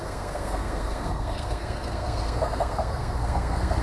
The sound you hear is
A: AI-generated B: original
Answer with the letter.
A